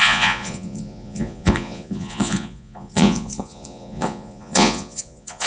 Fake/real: fake